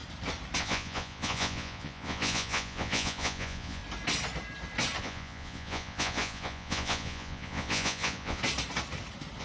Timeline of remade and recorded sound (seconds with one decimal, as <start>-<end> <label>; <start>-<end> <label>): 0.0-0.6 recorded; 0.6-3.8 remade; 3.8-5.0 recorded; 5.0-8.4 remade; 8.4-9.4 recorded